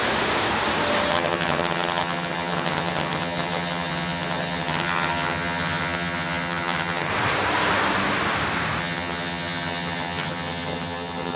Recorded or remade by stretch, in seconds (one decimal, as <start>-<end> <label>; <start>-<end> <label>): 0.0-1.1 recorded; 1.1-7.1 remade; 7.1-8.8 recorded; 8.8-11.4 remade